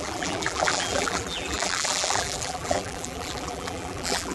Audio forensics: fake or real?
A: fake